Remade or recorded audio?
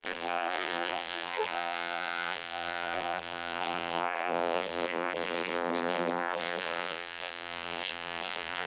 remade